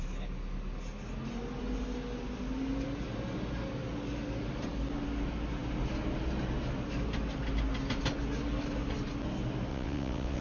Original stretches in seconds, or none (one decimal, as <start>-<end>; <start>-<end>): 0.0-9.7